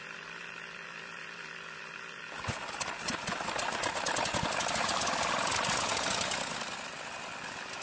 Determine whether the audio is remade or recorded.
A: recorded